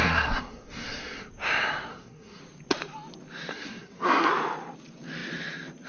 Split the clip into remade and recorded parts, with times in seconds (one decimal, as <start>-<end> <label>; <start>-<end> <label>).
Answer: 0.0-1.3 remade; 1.3-1.9 recorded; 1.9-2.4 remade; 2.4-3.5 recorded; 3.5-4.3 remade; 4.3-5.9 recorded